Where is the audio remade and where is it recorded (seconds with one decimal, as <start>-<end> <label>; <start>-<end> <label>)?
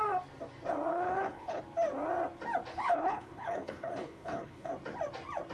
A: 0.0-0.9 recorded; 0.9-1.6 remade; 1.6-2.7 recorded; 2.7-4.7 remade; 4.7-5.5 recorded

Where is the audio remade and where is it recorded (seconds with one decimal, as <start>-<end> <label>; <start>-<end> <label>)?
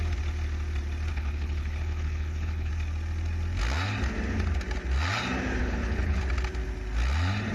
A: 0.0-1.1 recorded; 1.1-2.7 remade; 2.7-5.6 recorded; 5.6-6.2 remade; 6.2-7.5 recorded